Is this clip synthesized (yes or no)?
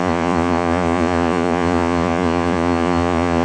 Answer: yes